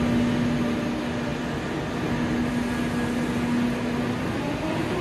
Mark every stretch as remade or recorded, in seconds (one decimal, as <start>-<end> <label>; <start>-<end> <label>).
0.0-5.0 recorded